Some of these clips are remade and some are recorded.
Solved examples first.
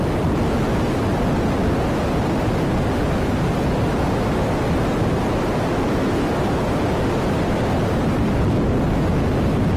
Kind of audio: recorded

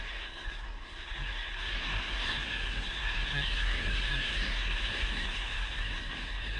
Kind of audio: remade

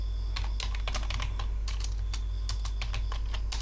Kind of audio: recorded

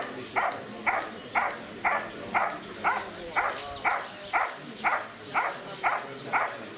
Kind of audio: recorded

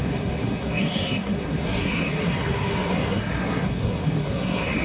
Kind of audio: remade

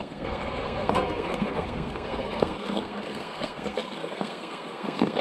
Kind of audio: remade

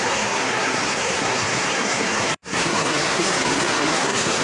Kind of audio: remade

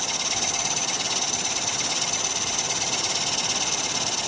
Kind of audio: recorded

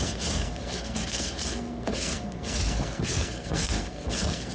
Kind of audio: remade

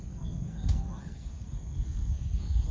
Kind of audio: remade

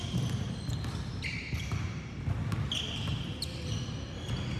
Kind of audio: recorded